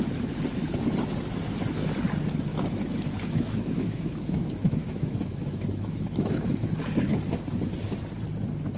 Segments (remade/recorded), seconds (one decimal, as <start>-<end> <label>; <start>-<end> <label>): 0.0-2.5 recorded; 2.5-7.0 remade; 7.0-8.8 recorded